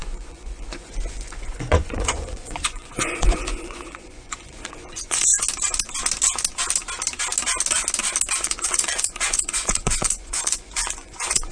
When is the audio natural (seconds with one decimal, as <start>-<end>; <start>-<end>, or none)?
5.3-8.3